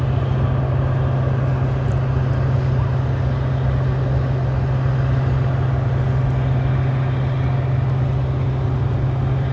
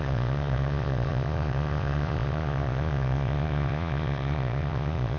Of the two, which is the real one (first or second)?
first